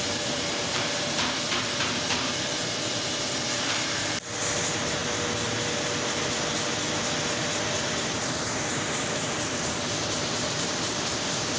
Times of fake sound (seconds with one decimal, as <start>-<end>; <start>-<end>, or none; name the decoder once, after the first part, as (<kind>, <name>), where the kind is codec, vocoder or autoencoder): 0.0-5.0 (vocoder, BigVGAN v2); 7.8-11.6